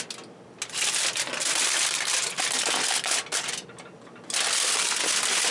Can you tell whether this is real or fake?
real